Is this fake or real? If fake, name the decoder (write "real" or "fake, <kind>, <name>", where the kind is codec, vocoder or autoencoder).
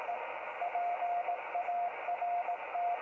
real